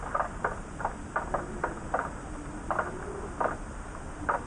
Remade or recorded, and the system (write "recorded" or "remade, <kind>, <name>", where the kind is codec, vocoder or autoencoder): recorded